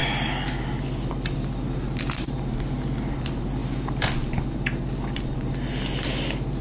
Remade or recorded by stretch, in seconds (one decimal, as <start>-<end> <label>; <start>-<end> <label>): 0.0-6.6 recorded